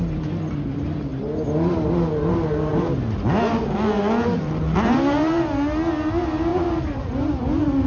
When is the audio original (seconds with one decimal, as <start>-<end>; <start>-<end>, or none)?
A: 0.0-7.9